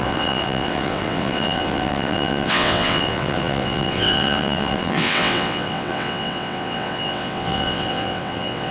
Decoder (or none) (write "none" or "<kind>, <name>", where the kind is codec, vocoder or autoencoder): vocoder, WaveNeXt